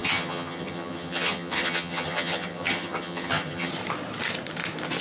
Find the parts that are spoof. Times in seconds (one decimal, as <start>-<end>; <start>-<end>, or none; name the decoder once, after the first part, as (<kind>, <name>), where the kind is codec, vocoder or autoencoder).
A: 0.0-3.7 (vocoder, HiFi-GAN)

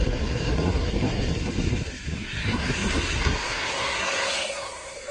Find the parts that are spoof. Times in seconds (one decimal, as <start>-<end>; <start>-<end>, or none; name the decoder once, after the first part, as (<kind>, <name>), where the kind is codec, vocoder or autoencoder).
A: 0.0-5.1 (codec, SNAC)